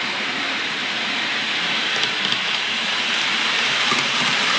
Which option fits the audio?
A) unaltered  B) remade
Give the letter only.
B